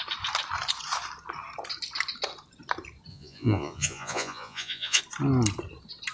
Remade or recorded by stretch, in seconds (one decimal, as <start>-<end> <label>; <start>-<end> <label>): 0.0-3.1 recorded; 3.1-5.0 remade; 5.0-6.1 recorded